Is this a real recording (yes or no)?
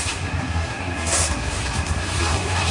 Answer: no